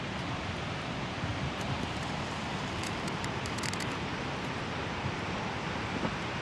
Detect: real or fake fake